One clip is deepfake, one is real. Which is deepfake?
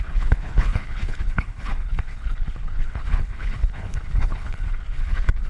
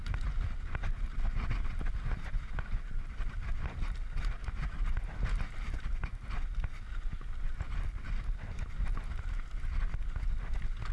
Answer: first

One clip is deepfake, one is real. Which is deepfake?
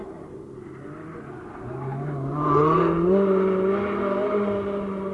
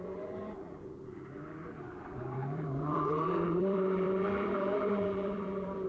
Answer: second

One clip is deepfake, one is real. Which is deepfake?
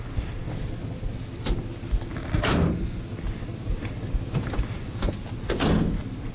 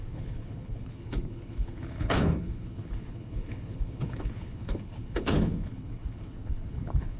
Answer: second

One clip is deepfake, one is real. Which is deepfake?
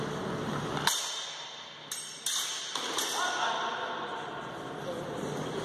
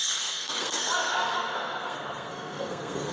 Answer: second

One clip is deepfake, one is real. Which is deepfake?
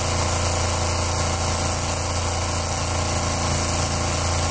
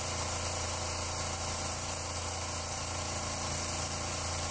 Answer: second